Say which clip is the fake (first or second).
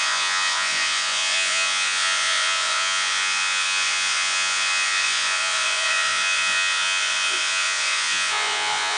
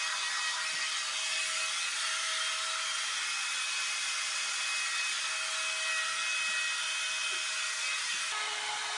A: first